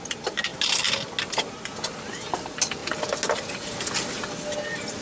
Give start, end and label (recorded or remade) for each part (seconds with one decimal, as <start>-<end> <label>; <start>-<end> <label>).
0.0-5.0 recorded

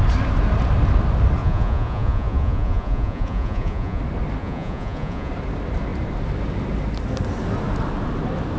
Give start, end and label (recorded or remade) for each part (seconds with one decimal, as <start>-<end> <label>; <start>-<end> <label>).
0.0-1.4 recorded; 1.4-4.0 remade; 4.0-4.4 recorded; 4.4-5.3 remade; 5.3-8.6 recorded

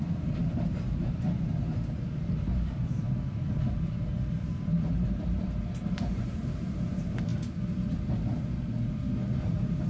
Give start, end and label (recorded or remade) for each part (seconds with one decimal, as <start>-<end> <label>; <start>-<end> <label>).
0.0-7.3 remade; 7.3-8.1 recorded; 8.1-9.9 remade

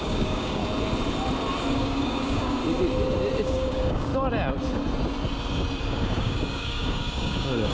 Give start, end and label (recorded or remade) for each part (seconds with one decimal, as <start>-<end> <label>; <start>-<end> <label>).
0.0-0.6 remade; 0.6-1.7 recorded; 1.7-2.6 remade; 2.6-3.4 recorded; 3.4-4.1 remade; 4.1-5.8 recorded; 5.8-7.7 remade

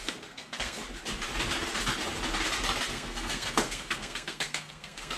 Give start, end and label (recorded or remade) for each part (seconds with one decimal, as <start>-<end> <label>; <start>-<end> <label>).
0.0-0.8 remade; 0.8-2.9 recorded; 2.9-5.2 remade

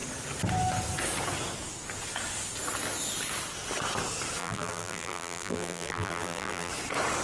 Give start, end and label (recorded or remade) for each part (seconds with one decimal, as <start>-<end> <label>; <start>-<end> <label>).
0.0-4.4 recorded; 4.4-6.7 remade; 6.7-7.2 recorded

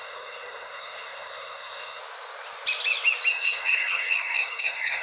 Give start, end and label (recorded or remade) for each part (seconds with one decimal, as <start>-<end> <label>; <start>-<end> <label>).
0.0-2.0 remade; 2.0-3.3 recorded; 3.3-5.0 remade